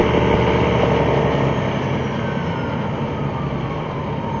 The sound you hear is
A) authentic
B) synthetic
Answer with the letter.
A